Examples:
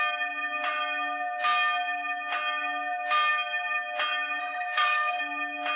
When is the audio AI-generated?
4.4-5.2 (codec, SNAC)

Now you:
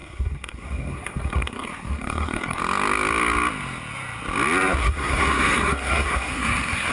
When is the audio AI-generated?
0.0-2.6 (codec, SNAC); 4.8-6.9

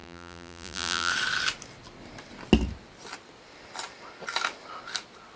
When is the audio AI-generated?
0.0-1.1 (vocoder, BigVGAN v2)

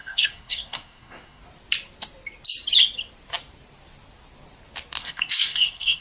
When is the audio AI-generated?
0.0-1.4 (codec, SNAC); 5.0-6.0

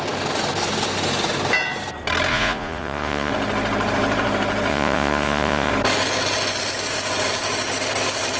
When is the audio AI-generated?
2.3-3.3 (vocoder, Vocos); 4.7-5.7